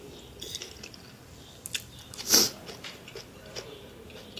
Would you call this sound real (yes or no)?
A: yes